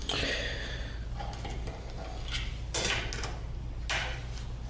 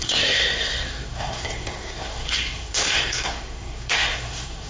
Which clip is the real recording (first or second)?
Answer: first